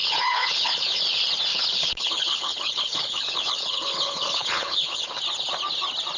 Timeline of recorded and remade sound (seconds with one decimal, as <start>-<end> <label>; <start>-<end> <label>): 0.0-1.0 remade; 1.0-1.5 recorded; 1.5-5.2 remade; 5.2-6.2 recorded